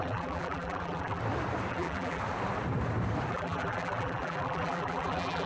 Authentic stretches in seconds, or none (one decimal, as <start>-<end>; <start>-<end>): 1.2-1.7; 2.2-3.3